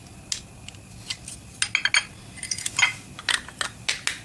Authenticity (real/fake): real